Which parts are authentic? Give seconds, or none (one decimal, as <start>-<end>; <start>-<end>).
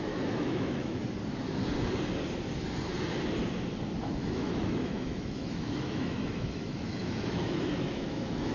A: 1.0-4.0